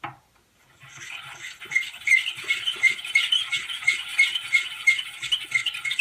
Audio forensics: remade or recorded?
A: recorded